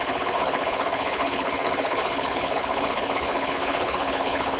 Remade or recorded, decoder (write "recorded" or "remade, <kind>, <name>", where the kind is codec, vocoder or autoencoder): remade, codec, HILCodec